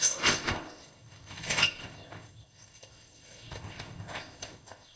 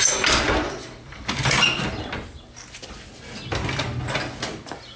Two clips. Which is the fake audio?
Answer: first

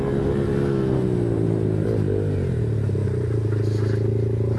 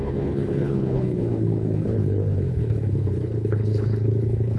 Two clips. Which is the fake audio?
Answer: second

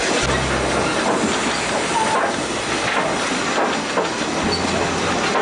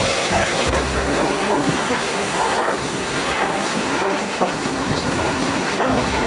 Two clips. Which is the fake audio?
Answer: second